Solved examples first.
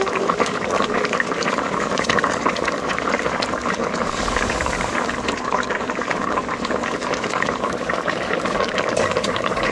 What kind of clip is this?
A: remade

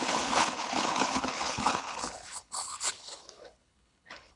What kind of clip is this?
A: remade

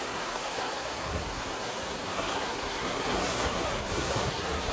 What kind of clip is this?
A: remade